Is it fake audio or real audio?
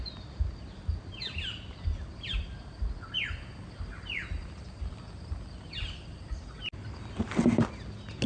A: real